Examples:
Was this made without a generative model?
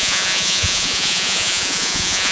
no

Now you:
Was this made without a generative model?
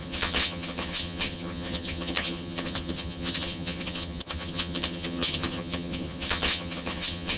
no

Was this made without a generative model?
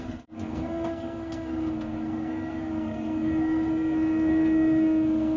no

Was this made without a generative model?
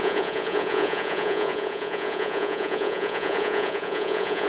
no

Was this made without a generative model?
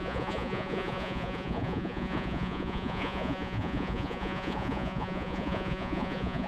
no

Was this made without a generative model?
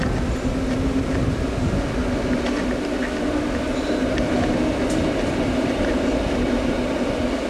yes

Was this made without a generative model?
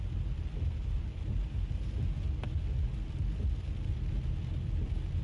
yes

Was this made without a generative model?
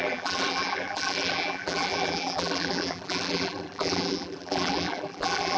no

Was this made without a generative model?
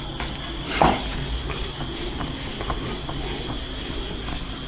yes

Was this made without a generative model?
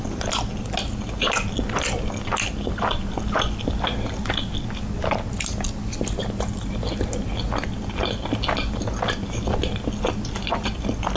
yes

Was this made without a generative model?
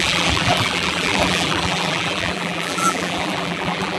no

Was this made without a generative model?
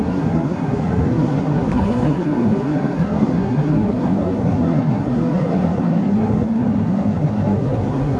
no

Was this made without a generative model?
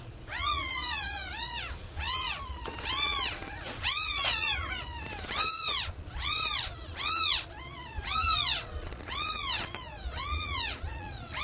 no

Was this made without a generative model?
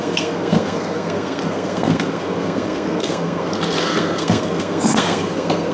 no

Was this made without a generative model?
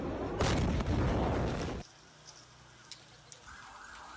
yes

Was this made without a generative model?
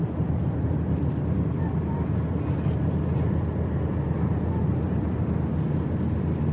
yes